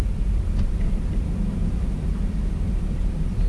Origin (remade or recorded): remade